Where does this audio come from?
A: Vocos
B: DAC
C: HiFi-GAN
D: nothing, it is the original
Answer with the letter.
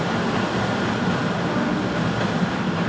D